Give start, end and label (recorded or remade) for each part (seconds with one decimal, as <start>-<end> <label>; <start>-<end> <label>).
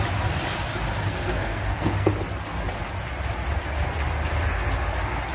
0.0-1.1 recorded; 1.1-2.1 remade; 2.1-5.3 recorded